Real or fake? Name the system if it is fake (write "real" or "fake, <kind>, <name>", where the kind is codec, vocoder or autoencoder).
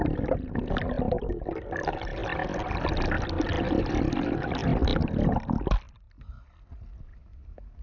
real